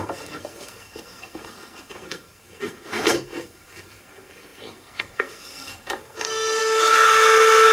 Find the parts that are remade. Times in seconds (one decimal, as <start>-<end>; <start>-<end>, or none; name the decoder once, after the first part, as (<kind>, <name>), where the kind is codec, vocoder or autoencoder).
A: 0.0-7.7 (codec, SNAC)